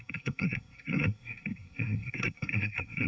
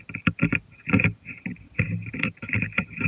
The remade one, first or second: first